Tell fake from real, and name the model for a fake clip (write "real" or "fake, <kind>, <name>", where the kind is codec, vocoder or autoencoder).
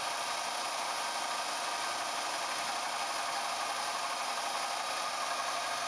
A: real